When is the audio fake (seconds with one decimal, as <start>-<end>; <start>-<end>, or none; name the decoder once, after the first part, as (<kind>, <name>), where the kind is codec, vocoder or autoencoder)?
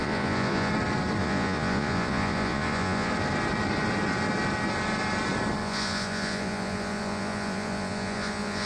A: 0.0-0.7 (vocoder, Vocos); 1.2-3.1; 5.6-8.7